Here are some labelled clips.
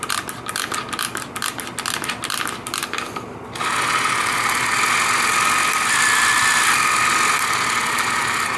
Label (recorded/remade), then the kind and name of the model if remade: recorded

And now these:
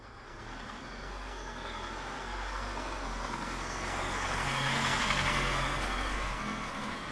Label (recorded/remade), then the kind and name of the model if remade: remade, codec, SNAC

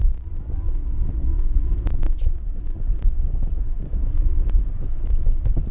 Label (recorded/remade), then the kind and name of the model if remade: recorded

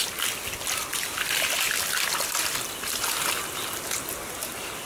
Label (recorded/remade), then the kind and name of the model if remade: recorded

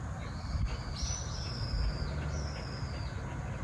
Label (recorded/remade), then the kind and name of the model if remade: recorded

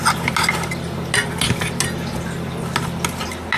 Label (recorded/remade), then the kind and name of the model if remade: recorded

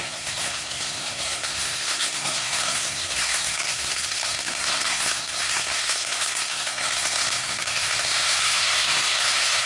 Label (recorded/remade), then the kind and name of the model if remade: remade, codec, SNAC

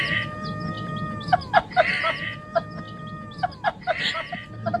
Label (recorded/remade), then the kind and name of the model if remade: recorded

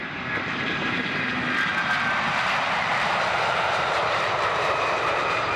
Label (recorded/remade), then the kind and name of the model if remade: remade, vocoder, BigVGAN v2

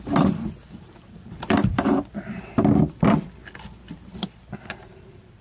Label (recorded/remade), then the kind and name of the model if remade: remade, vocoder, BigVGAN v2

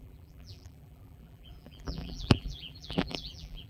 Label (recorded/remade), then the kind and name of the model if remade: remade, vocoder, BigVGAN v2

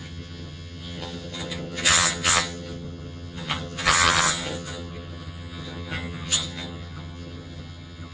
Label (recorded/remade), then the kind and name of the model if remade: remade, vocoder, HiFi-GAN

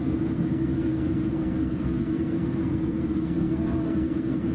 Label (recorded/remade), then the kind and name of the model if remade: remade, codec, SNAC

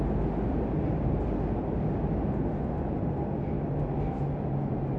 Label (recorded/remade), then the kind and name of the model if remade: recorded